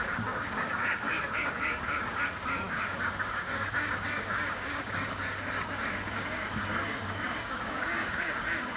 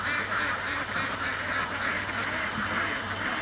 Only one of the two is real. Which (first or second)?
second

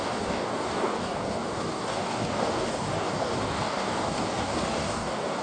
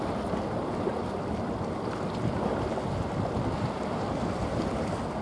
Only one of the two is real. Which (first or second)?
second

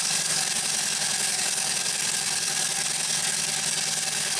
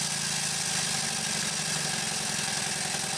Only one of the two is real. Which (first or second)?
second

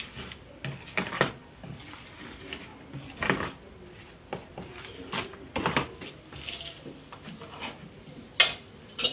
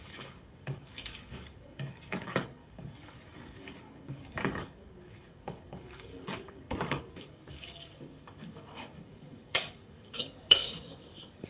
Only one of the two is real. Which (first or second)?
first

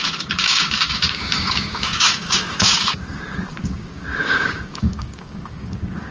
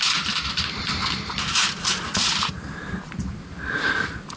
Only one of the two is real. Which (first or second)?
second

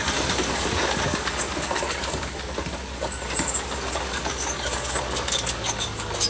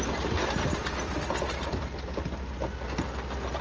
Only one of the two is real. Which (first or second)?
second